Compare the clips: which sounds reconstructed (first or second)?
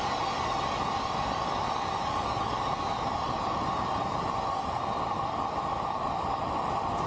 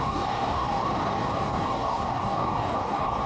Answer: second